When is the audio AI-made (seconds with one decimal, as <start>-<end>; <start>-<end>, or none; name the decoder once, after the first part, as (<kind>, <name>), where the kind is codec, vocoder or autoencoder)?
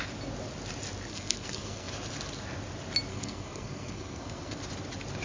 1.1-1.9 (codec, SNAC); 3.1-4.6